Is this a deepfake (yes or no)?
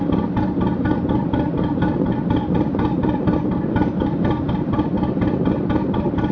no